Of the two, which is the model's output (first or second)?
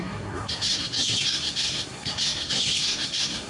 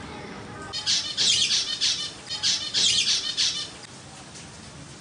first